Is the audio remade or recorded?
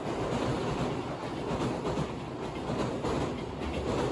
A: recorded